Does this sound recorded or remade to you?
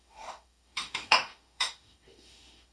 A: remade